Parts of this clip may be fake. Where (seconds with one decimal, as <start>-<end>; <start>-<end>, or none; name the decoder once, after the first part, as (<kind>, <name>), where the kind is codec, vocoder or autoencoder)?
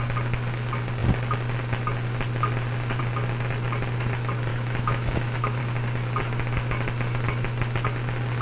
4.5-5.6 (autoencoder, DAC-VAE)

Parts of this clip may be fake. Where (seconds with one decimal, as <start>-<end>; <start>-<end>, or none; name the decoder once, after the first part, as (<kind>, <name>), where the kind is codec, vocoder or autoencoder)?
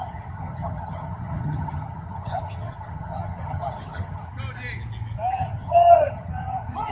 0.0-4.3 (vocoder, HiFi-GAN); 5.3-6.9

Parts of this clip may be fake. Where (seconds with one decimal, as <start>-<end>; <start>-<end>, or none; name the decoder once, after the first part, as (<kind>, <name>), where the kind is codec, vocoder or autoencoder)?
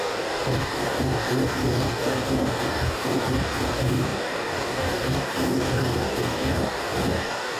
0.0-7.6 (codec, DAC)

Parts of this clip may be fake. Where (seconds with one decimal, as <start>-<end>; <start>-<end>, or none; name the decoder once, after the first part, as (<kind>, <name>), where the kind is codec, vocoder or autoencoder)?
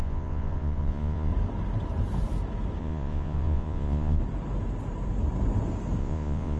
0.0-1.3 (vocoder, Vocos); 2.8-4.2; 6.0-6.6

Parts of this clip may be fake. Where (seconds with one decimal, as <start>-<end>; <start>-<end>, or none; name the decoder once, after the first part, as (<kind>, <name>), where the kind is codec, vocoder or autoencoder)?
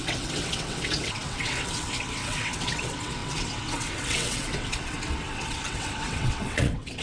0.0-7.0 (vocoder, WaveNeXt)